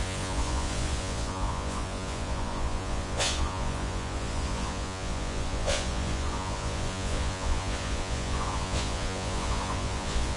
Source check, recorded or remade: remade